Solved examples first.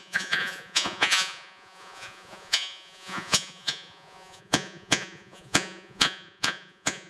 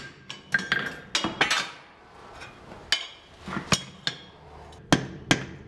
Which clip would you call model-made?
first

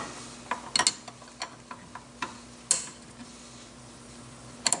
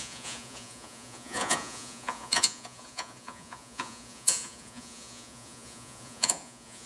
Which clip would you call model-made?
second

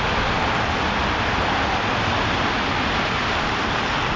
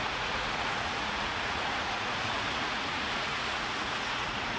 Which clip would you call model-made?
second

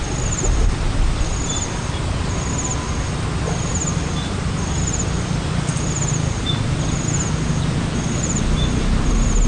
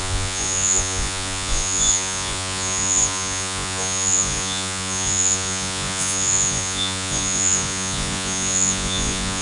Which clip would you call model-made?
second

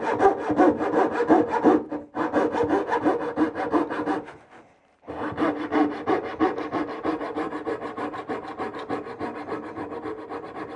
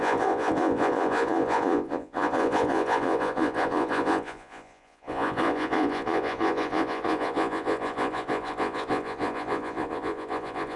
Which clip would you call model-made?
second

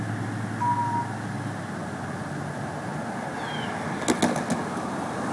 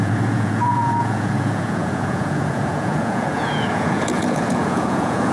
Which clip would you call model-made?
second